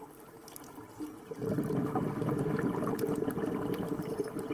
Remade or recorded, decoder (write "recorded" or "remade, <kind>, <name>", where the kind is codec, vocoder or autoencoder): recorded